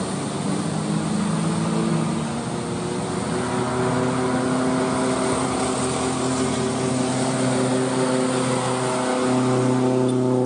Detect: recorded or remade recorded